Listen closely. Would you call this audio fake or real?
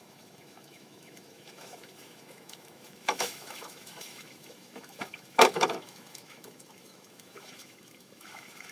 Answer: fake